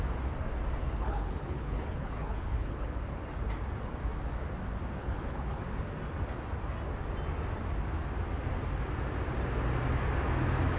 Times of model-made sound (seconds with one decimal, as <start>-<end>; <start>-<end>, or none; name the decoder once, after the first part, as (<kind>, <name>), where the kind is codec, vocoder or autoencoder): 0.8-3.2 (codec, HILCodec); 5.0-5.6